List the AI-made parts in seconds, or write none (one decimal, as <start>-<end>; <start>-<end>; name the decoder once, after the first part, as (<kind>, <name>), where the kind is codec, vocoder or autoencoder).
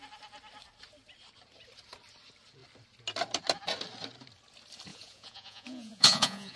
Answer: 4.9-6.6 (vocoder, Vocos)